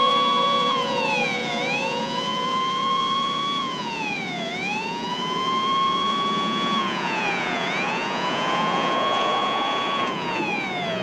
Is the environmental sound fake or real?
fake